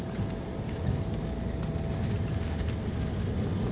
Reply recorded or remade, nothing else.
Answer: recorded